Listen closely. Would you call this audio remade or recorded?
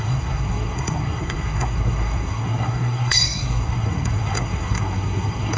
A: remade